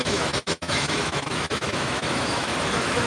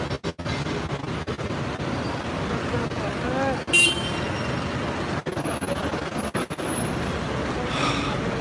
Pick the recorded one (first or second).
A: second